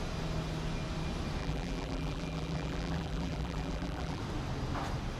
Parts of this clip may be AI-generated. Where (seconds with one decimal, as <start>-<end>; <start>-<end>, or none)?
1.4-4.2